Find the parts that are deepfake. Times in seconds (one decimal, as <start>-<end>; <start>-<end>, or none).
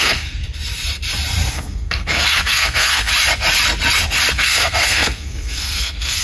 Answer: 0.0-0.4; 1.5-3.1; 4.3-6.2